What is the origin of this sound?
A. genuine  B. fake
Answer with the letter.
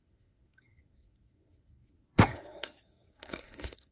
B